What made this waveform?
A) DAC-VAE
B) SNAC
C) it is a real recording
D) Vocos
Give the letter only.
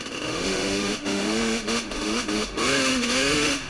A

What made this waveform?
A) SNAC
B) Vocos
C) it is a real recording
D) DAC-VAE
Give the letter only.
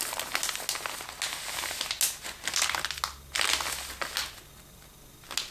C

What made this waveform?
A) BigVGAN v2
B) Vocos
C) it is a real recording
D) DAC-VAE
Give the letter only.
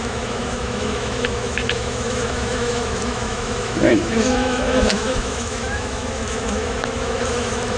D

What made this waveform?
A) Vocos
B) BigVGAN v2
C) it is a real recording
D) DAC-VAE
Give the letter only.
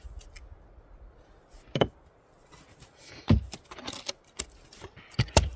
C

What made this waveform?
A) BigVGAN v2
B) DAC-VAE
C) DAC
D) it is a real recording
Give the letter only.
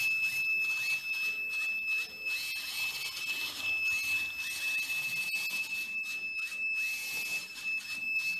D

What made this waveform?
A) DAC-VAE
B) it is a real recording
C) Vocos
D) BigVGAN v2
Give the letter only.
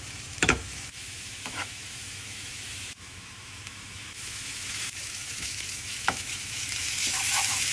A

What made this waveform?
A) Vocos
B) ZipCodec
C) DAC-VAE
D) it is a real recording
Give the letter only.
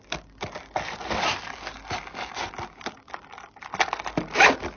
D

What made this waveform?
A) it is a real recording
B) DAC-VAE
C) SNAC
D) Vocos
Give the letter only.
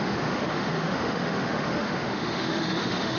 B